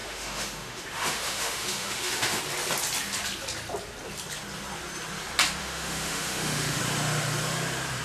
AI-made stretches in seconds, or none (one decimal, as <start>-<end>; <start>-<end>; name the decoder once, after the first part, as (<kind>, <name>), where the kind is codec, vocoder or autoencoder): 0.0-2.4 (autoencoder, DAC-VAE); 5.6-6.8

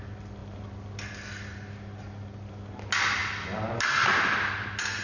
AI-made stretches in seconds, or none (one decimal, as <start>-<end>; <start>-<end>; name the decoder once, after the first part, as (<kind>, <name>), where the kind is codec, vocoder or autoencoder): none

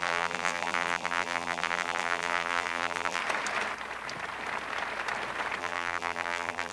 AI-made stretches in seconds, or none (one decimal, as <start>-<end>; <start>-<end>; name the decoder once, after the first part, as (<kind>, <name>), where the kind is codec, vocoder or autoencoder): 0.0-3.2 (vocoder, BigVGAN v2); 5.6-6.7

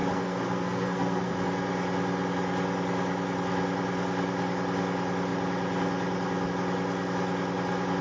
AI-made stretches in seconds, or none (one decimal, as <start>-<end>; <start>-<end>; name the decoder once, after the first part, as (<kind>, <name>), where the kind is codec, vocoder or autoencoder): 0.0-1.3 (codec, SNAC)